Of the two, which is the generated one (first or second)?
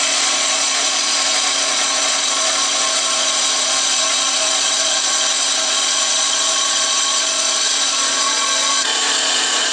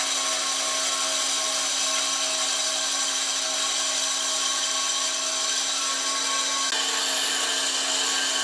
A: first